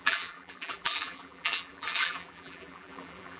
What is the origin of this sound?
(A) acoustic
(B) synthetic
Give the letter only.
B